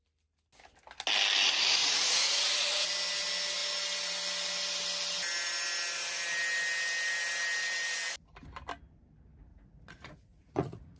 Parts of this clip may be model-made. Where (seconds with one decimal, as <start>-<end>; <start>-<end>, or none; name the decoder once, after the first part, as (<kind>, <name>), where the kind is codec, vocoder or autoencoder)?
1.8-2.9 (vocoder, Vocos); 9.5-11.0